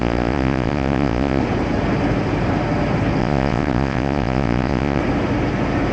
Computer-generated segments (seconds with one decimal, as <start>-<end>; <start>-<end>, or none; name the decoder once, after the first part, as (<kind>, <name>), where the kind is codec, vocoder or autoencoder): 0.0-1.4 (vocoder, Vocos); 3.2-5.0